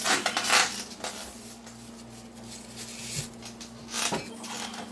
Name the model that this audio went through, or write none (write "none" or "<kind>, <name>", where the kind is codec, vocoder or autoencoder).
none